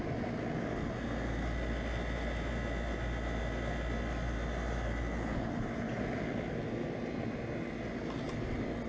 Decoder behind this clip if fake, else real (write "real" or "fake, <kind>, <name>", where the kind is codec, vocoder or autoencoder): real